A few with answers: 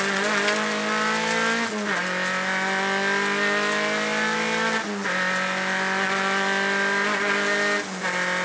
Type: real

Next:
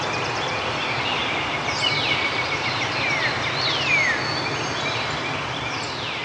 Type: real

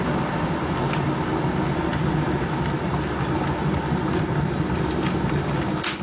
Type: real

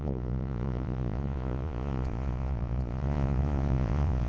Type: fake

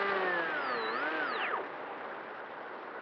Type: real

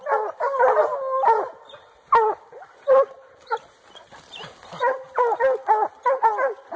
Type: real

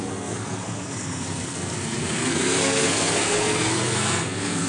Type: fake